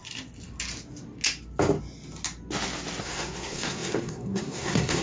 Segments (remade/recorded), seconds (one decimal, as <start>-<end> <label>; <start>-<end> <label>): 0.0-3.0 recorded; 3.0-5.0 remade